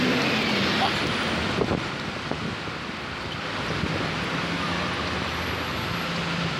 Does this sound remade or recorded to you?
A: recorded